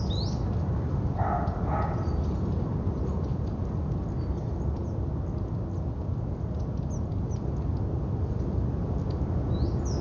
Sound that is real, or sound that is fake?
real